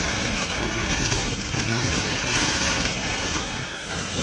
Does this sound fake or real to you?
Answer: fake